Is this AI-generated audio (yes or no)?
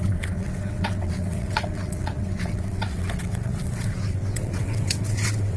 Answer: yes